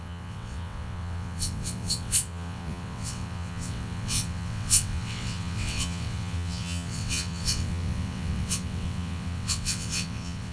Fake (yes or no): yes